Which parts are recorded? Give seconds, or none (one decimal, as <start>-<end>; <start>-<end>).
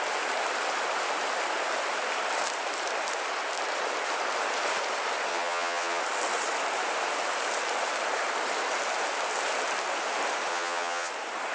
0.0-5.3; 6.0-10.5; 11.1-11.5